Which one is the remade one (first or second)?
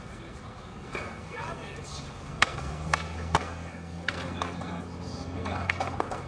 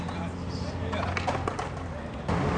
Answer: first